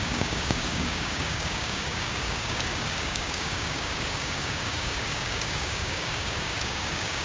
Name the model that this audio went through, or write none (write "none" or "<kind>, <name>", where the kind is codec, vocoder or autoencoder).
codec, DAC